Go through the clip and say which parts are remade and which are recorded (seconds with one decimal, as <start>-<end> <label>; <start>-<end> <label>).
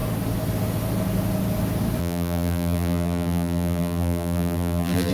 0.0-2.0 recorded; 2.0-5.1 remade